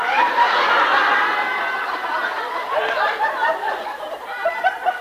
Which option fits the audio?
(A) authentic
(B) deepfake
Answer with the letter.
A